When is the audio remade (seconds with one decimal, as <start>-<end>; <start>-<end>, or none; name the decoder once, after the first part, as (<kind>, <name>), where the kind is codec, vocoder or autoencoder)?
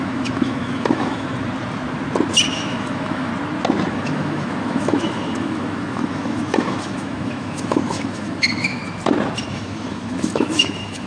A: 0.0-1.3 (autoencoder, DAC-VAE); 2.5-3.3; 3.9-8.8; 9.5-11.1